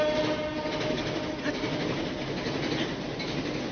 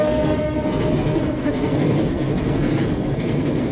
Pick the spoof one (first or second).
second